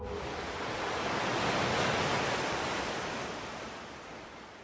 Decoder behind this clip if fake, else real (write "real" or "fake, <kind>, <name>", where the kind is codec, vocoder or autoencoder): real